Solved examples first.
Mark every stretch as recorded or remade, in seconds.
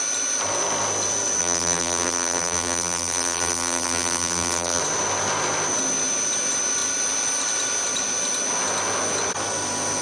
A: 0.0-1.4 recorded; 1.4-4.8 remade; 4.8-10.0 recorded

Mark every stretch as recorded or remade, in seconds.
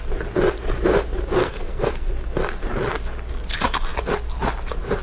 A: 0.0-1.4 recorded; 1.4-2.1 remade; 2.1-5.0 recorded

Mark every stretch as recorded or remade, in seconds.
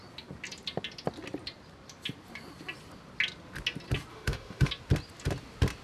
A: 0.0-4.1 recorded; 4.1-4.7 remade; 4.7-5.8 recorded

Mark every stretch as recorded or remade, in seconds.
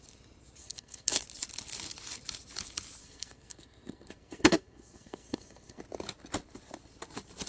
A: 0.0-0.6 recorded; 0.6-1.2 remade; 1.2-3.0 recorded; 3.0-5.8 remade; 5.8-7.5 recorded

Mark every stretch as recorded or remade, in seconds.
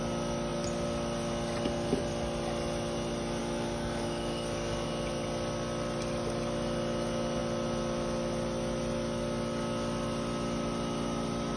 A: 0.0-3.4 recorded; 3.4-4.9 remade; 4.9-11.6 recorded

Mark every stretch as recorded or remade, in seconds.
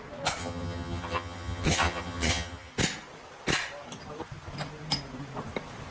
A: 0.0-0.4 recorded; 0.4-2.7 remade; 2.7-5.9 recorded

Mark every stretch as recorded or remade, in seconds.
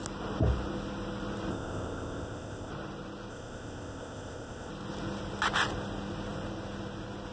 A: 0.0-1.5 recorded; 1.5-2.7 remade; 2.7-3.3 recorded; 3.3-4.7 remade; 4.7-7.3 recorded